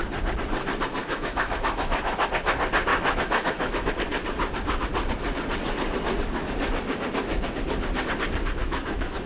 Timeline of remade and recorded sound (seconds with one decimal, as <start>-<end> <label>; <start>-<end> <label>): 0.0-1.0 recorded; 1.0-2.2 remade; 2.2-2.9 recorded; 2.9-3.9 remade; 3.9-8.6 recorded; 8.6-9.3 remade